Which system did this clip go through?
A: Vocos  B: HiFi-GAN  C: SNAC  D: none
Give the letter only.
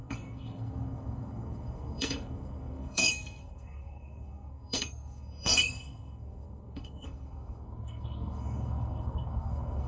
C